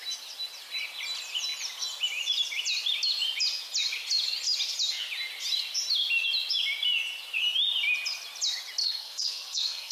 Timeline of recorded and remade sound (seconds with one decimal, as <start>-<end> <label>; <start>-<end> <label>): 0.0-8.8 recorded; 8.8-9.9 remade